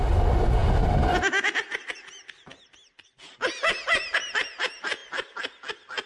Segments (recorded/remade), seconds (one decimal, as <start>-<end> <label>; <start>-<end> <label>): 0.0-6.1 recorded